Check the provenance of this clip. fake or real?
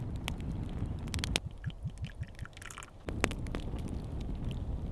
real